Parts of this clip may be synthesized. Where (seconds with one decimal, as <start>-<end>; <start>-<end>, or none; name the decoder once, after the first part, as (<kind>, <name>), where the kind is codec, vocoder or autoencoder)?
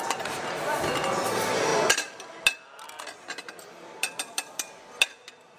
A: none